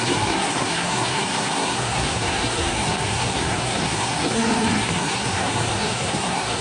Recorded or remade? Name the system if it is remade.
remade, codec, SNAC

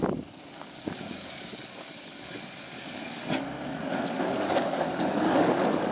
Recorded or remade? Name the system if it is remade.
remade, codec, DAC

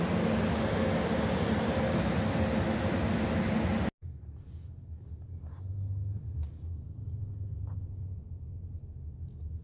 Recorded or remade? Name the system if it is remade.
recorded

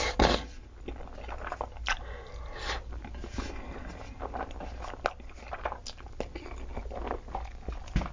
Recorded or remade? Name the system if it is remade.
recorded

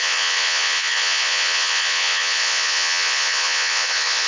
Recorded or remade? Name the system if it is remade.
remade, vocoder, Vocos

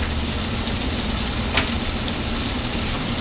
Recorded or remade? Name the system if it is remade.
recorded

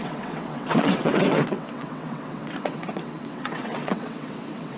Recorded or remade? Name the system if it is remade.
remade, vocoder, WaveNeXt